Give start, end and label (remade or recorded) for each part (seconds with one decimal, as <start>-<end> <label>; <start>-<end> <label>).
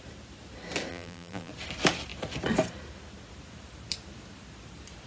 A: 0.0-0.9 recorded; 0.9-1.5 remade; 1.5-5.1 recorded